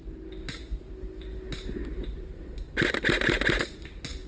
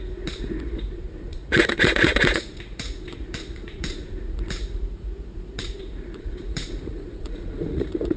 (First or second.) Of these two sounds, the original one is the first